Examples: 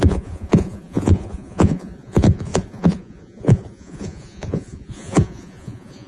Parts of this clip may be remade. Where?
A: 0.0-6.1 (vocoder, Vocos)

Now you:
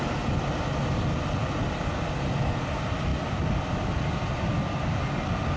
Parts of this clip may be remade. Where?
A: none

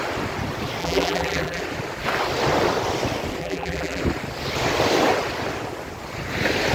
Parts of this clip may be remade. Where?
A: 0.8-1.6 (vocoder, BigVGAN v2); 3.4-4.0

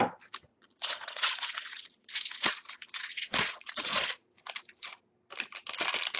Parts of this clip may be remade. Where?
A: 0.5-4.2 (vocoder, Vocos)

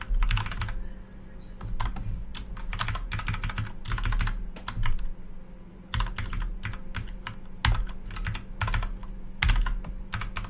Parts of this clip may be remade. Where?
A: none

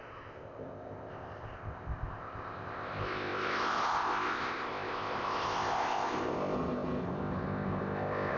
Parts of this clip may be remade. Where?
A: 0.0-8.4 (codec, ZipCodec)

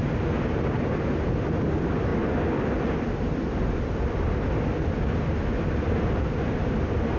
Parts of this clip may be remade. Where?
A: none